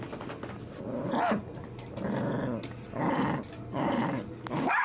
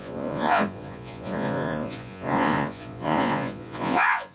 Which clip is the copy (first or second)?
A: second